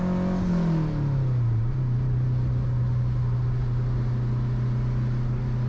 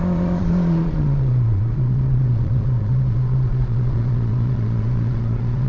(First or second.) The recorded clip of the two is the first